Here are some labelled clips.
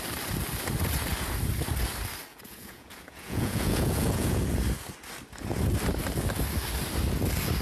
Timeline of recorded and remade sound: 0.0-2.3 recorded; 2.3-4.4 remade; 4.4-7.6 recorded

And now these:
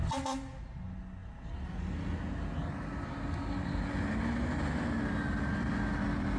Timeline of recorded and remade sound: 0.0-6.4 recorded